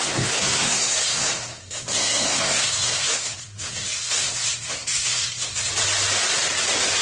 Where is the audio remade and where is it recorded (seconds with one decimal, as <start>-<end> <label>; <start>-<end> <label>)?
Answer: 0.0-5.7 remade; 5.7-7.0 recorded